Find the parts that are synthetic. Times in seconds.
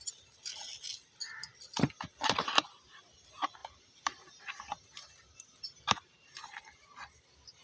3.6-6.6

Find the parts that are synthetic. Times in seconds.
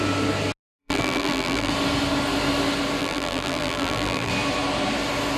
0.8-1.7; 3.0-4.3